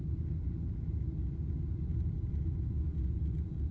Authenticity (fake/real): real